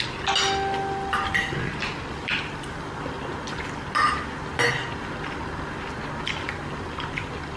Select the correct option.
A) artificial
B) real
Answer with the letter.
B